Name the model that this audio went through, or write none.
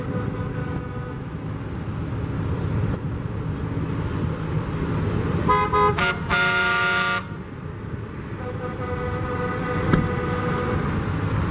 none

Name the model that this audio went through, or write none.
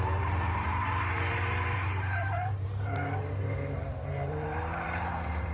vocoder, BigVGAN v2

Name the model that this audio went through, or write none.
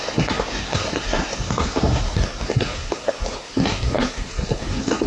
codec, SNAC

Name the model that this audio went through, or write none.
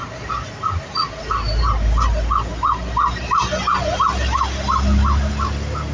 none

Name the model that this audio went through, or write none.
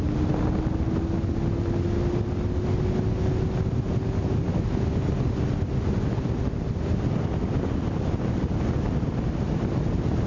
none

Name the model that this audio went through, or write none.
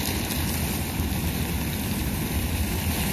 none